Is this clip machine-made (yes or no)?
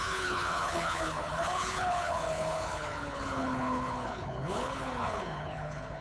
yes